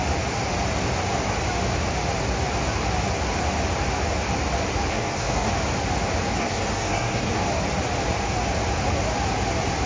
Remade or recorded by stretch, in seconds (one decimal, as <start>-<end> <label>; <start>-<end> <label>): 0.0-4.9 recorded; 4.9-5.5 remade; 5.5-6.4 recorded; 6.4-7.4 remade; 7.4-9.9 recorded